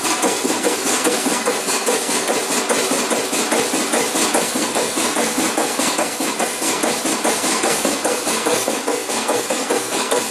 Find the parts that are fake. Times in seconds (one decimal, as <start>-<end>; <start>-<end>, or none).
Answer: 0.0-2.3; 4.4-6.8; 7.3-10.3